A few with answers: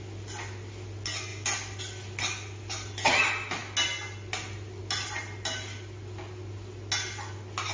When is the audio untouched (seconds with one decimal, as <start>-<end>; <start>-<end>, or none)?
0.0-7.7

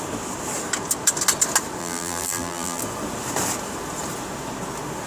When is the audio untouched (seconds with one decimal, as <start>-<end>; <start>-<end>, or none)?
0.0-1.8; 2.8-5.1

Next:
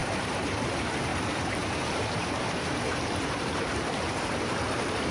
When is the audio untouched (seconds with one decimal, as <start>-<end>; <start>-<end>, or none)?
0.7-1.1; 4.2-5.1

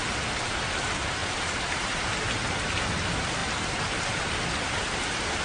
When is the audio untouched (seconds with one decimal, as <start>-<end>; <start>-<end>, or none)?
0.0-1.2; 2.0-3.4